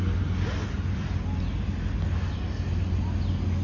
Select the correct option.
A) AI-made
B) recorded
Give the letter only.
B